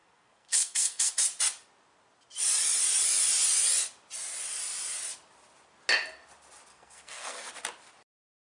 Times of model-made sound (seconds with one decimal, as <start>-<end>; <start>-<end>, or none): 0.0-1.1; 6.7-7.5